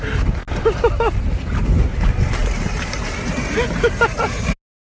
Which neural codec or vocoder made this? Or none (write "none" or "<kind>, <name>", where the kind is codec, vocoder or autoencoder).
none